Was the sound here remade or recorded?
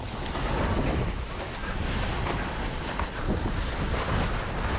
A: recorded